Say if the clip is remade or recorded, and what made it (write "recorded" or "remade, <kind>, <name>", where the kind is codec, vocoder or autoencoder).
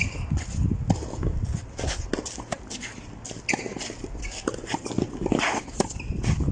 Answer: recorded